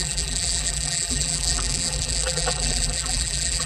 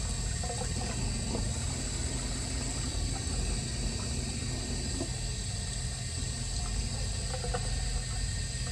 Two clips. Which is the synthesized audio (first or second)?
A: first